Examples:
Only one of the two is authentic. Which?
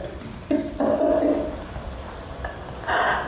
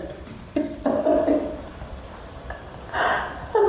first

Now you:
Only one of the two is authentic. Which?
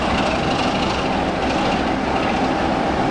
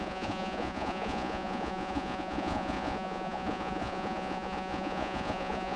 first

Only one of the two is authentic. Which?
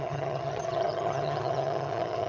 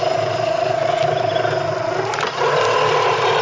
second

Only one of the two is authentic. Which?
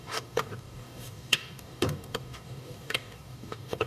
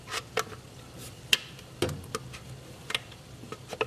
second